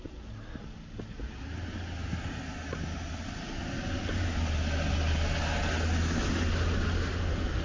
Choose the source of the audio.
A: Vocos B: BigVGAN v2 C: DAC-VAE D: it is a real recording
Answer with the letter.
D